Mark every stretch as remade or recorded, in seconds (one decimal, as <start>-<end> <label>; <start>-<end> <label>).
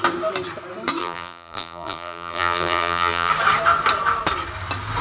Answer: 0.0-1.0 recorded; 1.0-3.3 remade; 3.3-5.0 recorded